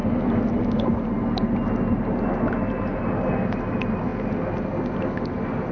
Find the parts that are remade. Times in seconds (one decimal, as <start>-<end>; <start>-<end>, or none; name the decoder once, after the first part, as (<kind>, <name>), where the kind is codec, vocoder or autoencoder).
none